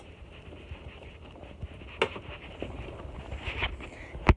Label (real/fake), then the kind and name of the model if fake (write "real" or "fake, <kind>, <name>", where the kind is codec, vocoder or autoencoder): real